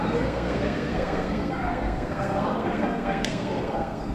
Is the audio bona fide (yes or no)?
no